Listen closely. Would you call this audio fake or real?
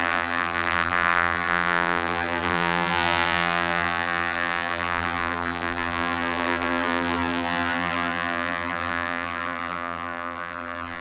fake